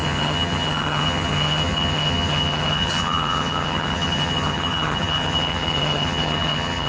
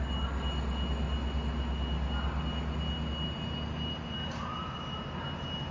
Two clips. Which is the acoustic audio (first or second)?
second